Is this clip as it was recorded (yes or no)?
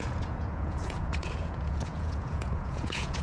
no